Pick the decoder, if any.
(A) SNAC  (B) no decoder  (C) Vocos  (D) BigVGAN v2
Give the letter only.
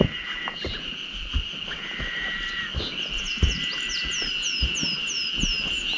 B